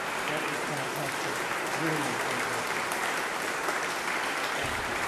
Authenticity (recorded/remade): recorded